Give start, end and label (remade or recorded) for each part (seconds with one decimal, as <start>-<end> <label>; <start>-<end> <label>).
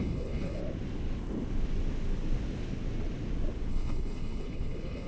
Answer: 0.0-0.6 remade; 0.6-3.7 recorded; 3.7-5.1 remade